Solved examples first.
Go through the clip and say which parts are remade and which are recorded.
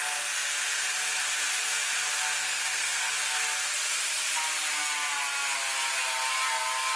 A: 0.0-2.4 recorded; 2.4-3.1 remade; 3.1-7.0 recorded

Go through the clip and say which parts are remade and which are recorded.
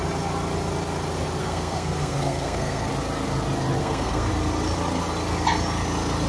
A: 0.0-1.4 recorded; 1.4-2.9 remade; 2.9-3.8 recorded; 3.8-4.3 remade; 4.3-6.3 recorded